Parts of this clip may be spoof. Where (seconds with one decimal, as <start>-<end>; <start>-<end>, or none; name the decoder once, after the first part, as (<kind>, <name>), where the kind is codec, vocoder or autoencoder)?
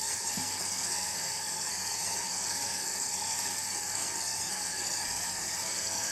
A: 0.0-6.1 (codec, SNAC)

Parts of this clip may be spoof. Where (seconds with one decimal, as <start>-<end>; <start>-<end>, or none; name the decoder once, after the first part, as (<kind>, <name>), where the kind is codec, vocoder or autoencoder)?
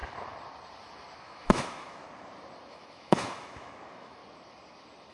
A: 1.2-2.0 (autoencoder, DAC-VAE); 2.7-4.2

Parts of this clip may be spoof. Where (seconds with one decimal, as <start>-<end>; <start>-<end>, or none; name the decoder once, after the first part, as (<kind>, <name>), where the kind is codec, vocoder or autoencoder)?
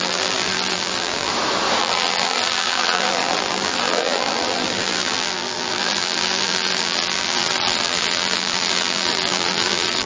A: 0.0-1.3 (vocoder, BigVGAN v2); 1.8-10.1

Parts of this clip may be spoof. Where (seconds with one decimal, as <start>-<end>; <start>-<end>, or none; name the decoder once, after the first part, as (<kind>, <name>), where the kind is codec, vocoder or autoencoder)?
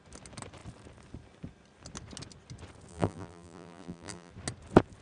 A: 2.9-4.3 (vocoder, BigVGAN v2)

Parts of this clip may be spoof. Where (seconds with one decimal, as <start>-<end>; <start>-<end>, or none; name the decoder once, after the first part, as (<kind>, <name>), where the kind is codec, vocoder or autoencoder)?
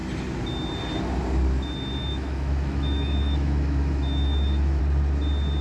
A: 2.0-4.8 (autoencoder, DAC-VAE)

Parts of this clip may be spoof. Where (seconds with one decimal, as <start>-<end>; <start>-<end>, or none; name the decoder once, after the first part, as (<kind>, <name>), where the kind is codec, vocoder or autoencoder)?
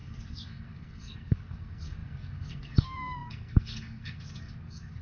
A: 0.0-5.0 (codec, SNAC)